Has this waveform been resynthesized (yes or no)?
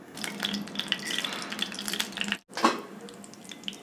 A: no